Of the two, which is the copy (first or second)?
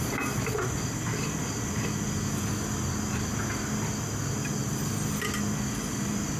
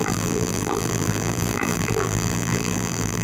second